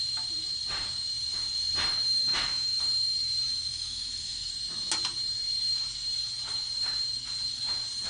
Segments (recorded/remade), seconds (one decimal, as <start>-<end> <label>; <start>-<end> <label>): 0.0-2.3 recorded; 2.3-2.8 remade; 2.8-3.7 recorded; 3.7-4.5 remade; 4.5-8.1 recorded